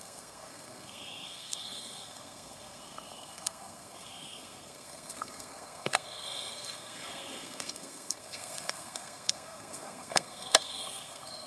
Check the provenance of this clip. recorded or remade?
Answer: remade